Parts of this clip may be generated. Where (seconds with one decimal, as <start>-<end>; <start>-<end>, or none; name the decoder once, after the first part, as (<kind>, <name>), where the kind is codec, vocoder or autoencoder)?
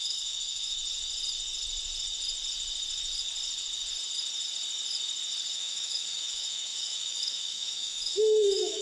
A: 0.0-0.8 (autoencoder, DAC-VAE); 5.5-8.8